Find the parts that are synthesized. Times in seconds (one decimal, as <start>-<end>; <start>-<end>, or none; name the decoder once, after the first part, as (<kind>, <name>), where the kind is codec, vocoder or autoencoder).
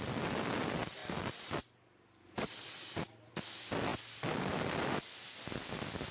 1.0-3.3 (vocoder, BigVGAN v2); 3.9-4.6